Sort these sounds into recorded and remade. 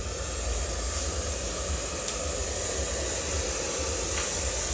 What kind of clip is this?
recorded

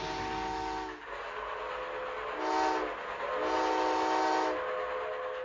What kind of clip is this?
recorded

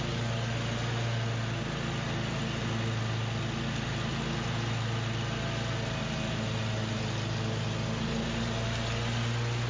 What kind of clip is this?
recorded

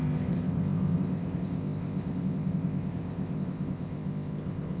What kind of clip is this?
remade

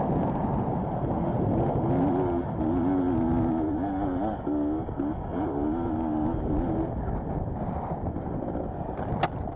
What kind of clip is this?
recorded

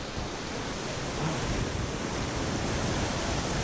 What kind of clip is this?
recorded